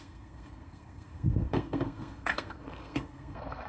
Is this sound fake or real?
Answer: fake